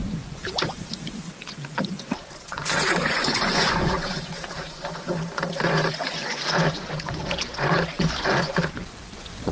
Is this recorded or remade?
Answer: remade